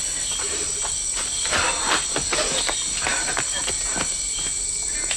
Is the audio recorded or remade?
recorded